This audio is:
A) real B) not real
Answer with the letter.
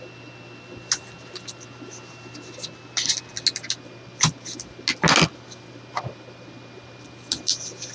A